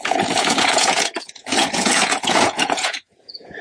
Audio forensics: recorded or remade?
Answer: remade